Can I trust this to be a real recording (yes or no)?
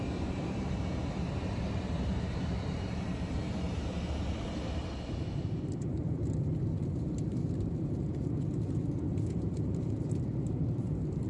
no